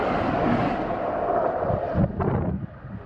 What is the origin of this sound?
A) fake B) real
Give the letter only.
B